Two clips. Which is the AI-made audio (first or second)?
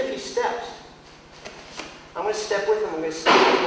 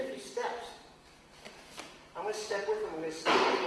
second